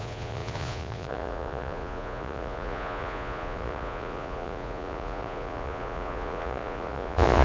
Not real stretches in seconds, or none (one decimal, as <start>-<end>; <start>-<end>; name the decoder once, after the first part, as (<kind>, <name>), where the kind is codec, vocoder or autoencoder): 0.0-7.4 (vocoder, Vocos)